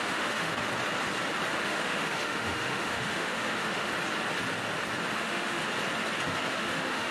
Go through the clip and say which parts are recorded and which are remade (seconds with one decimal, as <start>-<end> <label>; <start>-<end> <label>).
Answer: 0.0-0.7 remade; 0.7-1.6 recorded; 1.6-3.9 remade; 3.9-5.1 recorded; 5.1-5.6 remade; 5.6-6.6 recorded; 6.6-7.1 remade